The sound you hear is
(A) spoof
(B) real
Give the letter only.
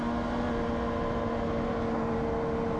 B